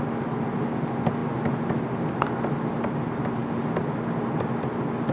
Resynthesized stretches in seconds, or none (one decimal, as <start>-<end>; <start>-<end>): none